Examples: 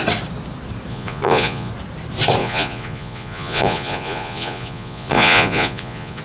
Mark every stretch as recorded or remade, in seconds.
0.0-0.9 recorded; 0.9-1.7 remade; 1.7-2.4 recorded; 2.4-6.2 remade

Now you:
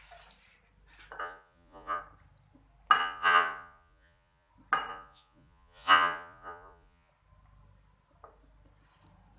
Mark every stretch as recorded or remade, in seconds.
0.0-1.2 recorded; 1.2-2.0 remade; 2.0-3.0 recorded; 3.0-4.5 remade; 4.5-4.9 recorded; 4.9-7.1 remade; 7.1-9.4 recorded

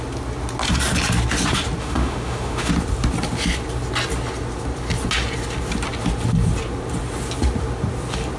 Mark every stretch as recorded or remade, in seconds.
0.0-1.8 recorded; 1.8-2.7 remade; 2.7-8.4 recorded